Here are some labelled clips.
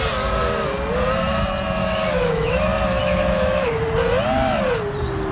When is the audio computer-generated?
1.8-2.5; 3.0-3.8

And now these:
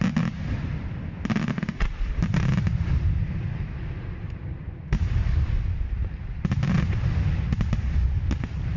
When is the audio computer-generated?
0.0-8.8